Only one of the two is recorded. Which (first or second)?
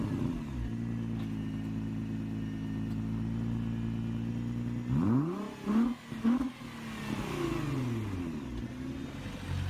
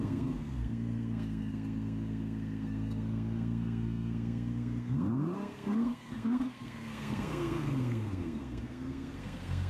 first